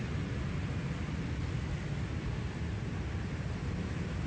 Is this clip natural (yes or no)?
yes